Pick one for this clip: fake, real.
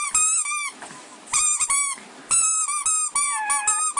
real